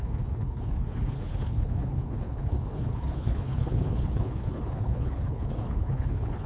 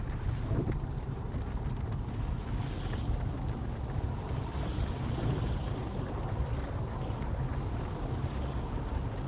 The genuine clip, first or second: second